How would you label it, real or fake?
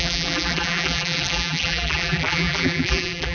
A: fake